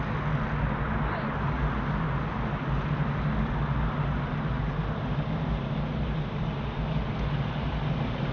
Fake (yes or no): no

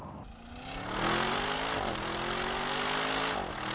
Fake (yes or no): no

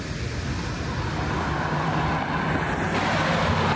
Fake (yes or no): no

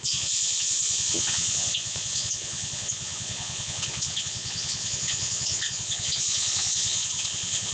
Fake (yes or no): yes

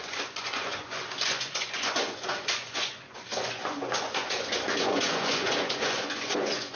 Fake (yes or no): yes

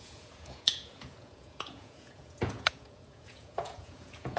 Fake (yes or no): yes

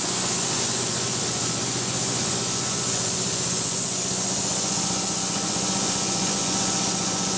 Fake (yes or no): yes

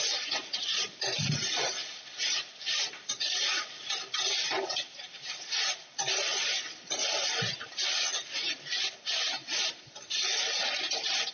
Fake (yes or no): no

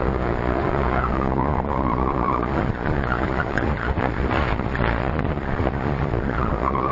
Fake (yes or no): yes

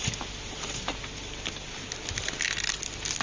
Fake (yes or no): no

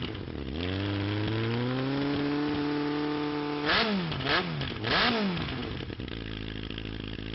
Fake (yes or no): no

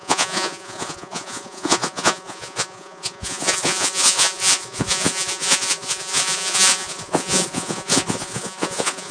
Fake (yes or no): yes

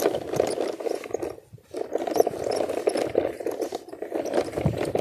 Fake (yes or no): no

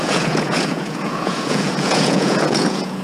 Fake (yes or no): yes